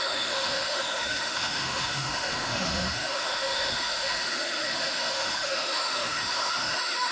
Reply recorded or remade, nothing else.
remade